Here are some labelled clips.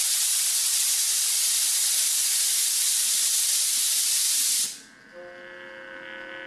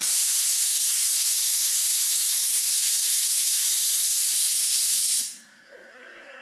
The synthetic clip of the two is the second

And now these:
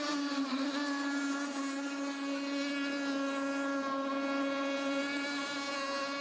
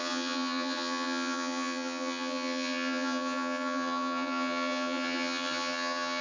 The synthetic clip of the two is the second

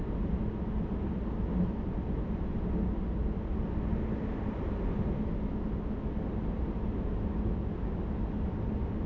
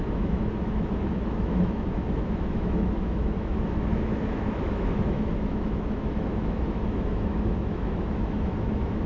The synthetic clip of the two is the second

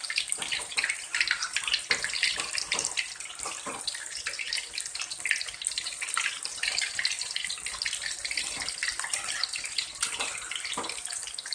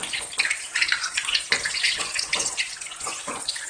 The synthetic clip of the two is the second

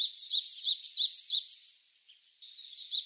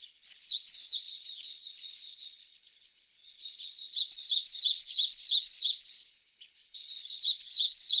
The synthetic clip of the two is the second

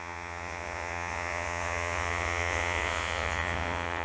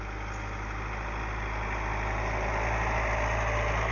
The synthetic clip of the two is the first